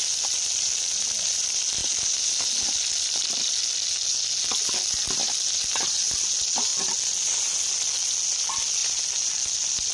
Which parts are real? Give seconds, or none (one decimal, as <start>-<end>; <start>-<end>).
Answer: 0.0-9.9